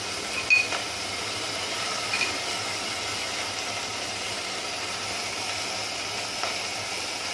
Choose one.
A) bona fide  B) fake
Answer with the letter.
A